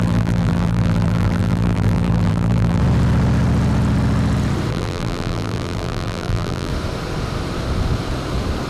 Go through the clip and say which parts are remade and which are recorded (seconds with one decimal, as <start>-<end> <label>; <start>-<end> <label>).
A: 0.0-2.8 remade; 2.8-4.7 recorded; 4.7-6.7 remade; 6.7-8.7 recorded